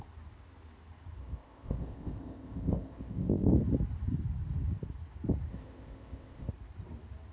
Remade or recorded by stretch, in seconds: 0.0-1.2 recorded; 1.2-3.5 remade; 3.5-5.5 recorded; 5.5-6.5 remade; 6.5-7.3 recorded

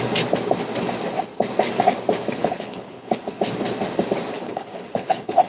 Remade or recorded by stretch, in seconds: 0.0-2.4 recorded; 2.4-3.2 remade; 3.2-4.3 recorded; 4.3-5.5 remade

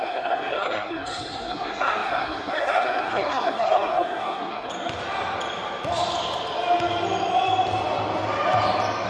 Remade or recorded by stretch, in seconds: 0.0-4.7 remade; 4.7-9.1 recorded

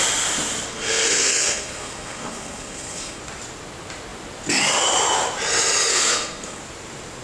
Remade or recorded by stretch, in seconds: 0.0-0.7 recorded; 0.7-3.2 remade; 3.2-5.9 recorded; 5.9-6.6 remade; 6.6-7.2 recorded